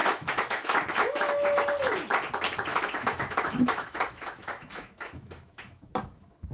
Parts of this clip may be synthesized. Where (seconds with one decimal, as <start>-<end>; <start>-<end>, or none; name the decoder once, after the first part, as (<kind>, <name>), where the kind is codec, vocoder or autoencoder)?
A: 0.0-1.7 (autoencoder, DAC-VAE); 2.7-5.9